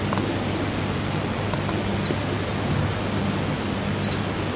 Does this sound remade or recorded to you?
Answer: recorded